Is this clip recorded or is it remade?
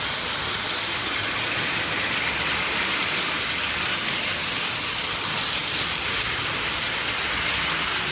recorded